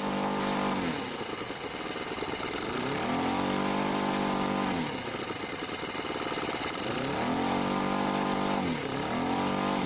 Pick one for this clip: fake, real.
real